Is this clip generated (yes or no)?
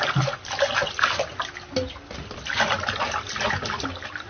no